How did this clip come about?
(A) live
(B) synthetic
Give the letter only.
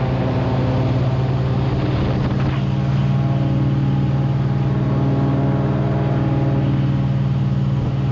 A